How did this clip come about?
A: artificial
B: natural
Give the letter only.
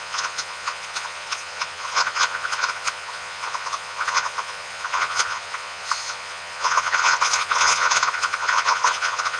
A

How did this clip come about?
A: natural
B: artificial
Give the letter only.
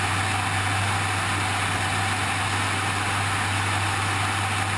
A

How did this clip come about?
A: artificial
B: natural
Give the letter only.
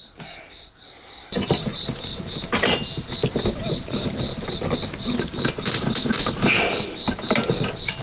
B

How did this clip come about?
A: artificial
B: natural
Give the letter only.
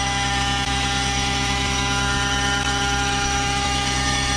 A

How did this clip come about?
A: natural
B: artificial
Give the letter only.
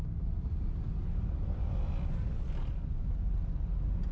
A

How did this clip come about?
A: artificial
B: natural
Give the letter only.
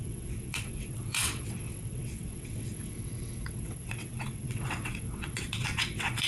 A